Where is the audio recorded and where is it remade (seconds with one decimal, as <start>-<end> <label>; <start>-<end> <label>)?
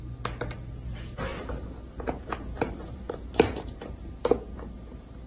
0.0-1.3 recorded; 1.3-3.5 remade; 3.5-5.3 recorded